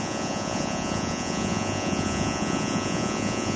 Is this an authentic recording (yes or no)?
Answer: no